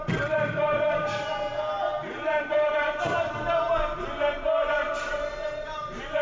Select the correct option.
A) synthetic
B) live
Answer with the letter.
B